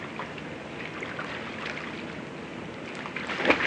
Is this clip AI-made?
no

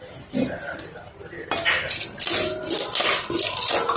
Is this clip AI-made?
no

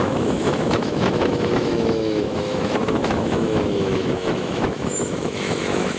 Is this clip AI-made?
yes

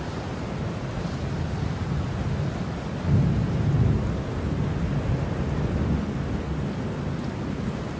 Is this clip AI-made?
no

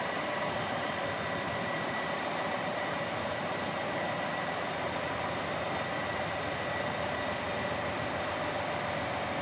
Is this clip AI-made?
no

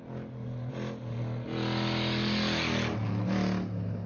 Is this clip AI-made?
no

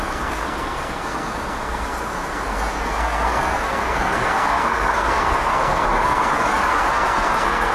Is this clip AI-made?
yes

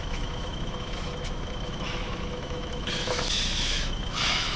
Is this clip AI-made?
yes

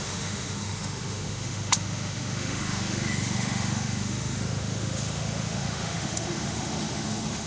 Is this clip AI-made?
yes